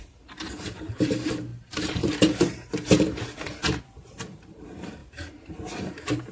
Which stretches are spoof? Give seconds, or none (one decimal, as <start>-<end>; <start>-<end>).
0.0-6.3